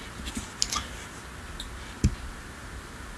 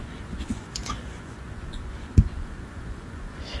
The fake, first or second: second